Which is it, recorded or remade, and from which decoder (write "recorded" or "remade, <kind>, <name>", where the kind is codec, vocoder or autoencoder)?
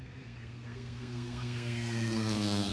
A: remade, codec, SNAC